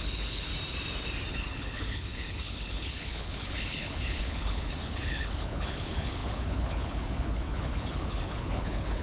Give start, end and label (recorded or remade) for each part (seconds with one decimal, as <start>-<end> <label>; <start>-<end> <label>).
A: 0.0-0.5 remade; 0.5-1.3 recorded; 1.3-9.0 remade